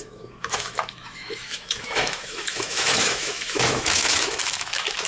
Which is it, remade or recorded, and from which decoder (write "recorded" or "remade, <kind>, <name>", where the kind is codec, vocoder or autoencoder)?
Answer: remade, autoencoder, DAC-VAE